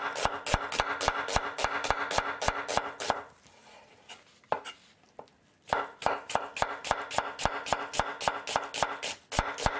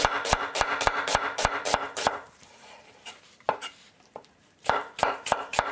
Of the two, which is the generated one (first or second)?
second